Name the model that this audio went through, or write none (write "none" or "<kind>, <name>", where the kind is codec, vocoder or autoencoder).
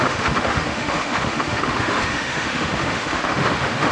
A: autoencoder, DAC-VAE